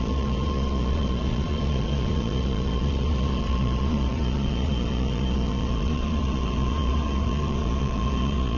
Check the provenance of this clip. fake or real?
fake